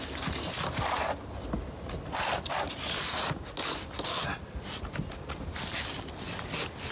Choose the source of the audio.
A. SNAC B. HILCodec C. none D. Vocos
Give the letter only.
C